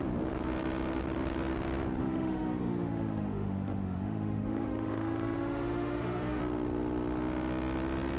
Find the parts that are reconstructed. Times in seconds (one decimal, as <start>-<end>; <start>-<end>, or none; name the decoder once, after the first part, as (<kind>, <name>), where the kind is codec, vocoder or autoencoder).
2.0-6.4 (autoencoder, DAC-VAE)